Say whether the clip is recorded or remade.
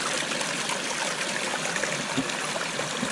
recorded